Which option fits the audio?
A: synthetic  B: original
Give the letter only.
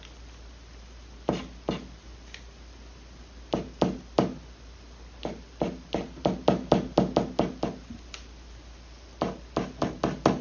B